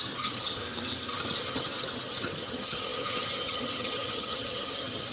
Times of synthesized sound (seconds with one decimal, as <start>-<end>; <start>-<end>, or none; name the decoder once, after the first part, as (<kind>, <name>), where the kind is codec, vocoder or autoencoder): 0.0-0.6 (vocoder, HiFi-GAN); 1.4-5.1